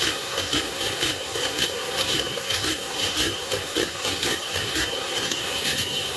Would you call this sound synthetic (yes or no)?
yes